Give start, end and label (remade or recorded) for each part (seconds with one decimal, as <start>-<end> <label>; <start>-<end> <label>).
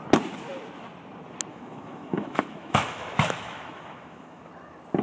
0.0-1.5 recorded; 1.5-4.5 remade; 4.5-5.0 recorded